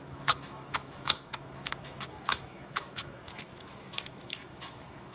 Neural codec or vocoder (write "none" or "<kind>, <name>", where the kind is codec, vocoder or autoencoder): autoencoder, DAC-VAE